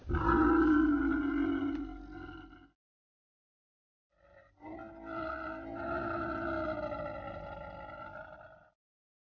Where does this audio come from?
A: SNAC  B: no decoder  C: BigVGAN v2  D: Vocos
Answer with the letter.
B